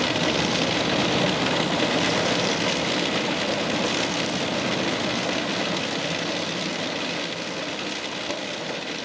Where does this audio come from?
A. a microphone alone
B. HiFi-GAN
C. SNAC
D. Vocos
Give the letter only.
A